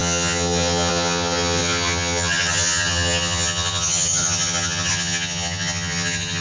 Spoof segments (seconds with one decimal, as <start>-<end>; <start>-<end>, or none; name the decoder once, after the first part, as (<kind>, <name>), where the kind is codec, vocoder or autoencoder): 0.0-6.4 (vocoder, HiFi-GAN)